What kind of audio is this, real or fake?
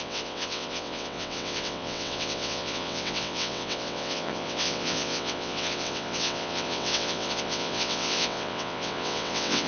fake